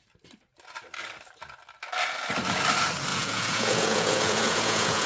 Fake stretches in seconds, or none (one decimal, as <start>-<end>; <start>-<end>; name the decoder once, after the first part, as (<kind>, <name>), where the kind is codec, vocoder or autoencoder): 3.1-5.1 (vocoder, Vocos)

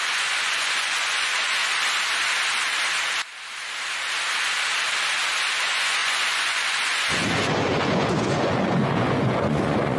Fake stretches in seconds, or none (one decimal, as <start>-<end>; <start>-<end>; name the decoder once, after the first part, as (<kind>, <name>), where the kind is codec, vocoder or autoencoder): 0.0-1.6 (vocoder, Vocos); 5.6-10.0

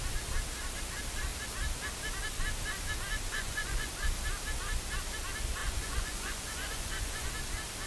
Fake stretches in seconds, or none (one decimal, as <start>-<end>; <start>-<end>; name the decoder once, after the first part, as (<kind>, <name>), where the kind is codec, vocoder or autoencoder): 3.3-3.9 (vocoder, Vocos); 5.6-7.3

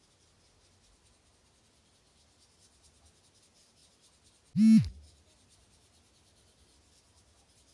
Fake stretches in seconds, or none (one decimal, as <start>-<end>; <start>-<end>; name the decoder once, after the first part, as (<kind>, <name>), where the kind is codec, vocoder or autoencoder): none

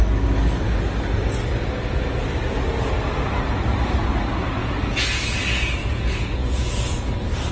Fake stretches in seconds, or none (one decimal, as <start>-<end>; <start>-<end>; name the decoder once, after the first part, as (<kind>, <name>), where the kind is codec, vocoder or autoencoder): 4.6-5.2 (vocoder, Vocos); 5.8-7.1

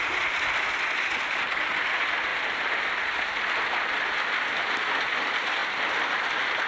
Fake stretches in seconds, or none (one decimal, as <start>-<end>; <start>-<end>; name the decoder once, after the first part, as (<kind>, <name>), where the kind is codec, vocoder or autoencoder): none

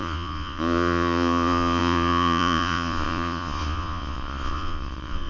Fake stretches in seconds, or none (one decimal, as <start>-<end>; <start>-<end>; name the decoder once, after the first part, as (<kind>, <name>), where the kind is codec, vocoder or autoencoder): 0.0-5.3 (vocoder, Vocos)

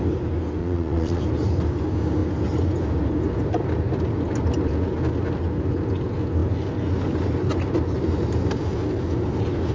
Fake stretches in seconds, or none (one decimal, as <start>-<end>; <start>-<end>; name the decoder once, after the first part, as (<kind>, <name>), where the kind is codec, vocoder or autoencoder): 0.6-1.2 (vocoder, Vocos)